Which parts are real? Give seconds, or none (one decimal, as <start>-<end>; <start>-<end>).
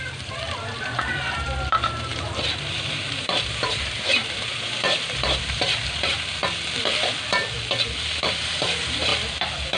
6.4-8.4; 9.1-9.8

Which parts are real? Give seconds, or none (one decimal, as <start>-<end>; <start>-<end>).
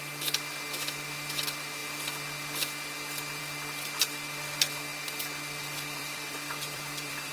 0.0-5.6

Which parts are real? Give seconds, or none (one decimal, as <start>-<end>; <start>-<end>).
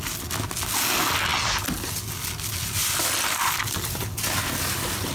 0.0-5.1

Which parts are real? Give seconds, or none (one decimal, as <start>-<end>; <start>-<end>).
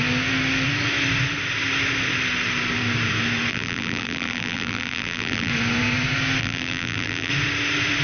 0.0-3.5; 5.5-6.4; 7.3-8.0